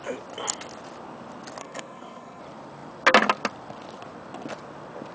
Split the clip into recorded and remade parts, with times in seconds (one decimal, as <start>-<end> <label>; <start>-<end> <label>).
0.0-1.6 recorded; 1.6-2.4 remade; 2.4-5.1 recorded